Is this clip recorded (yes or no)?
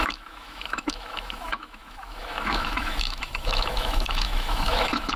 no